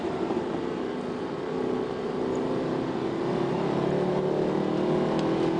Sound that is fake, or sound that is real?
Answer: real